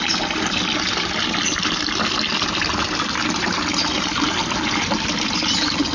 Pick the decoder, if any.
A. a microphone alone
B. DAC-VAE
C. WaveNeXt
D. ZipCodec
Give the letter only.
A